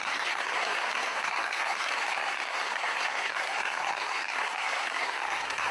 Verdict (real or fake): fake